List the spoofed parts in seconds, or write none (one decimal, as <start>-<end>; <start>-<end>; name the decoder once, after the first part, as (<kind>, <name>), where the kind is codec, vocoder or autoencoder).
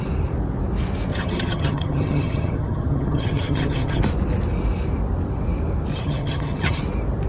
1.1-4.0 (vocoder, HiFi-GAN); 5.9-6.8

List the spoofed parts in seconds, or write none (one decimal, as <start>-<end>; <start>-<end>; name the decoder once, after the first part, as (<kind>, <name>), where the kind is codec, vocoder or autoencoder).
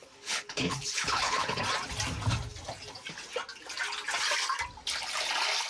0.0-1.6 (codec, HILCodec)